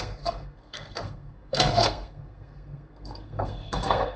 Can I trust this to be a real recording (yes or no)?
no